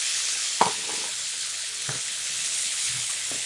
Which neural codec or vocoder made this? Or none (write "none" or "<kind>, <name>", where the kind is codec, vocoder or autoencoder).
codec, HILCodec